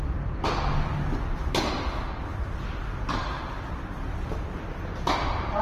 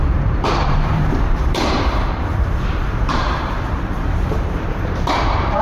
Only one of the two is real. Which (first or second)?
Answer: first